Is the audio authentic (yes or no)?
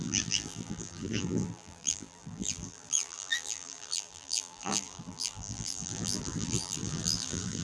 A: no